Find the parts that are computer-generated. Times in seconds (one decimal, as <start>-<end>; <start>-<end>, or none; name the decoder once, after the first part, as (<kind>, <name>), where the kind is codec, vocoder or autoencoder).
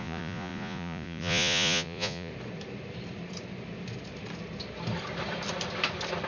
0.0-2.3 (vocoder, Vocos)